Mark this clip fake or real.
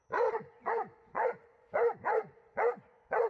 fake